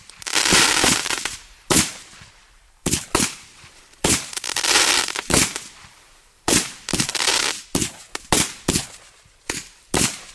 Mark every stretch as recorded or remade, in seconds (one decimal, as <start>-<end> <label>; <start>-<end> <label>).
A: 0.0-7.3 remade; 7.3-9.3 recorded; 9.3-10.3 remade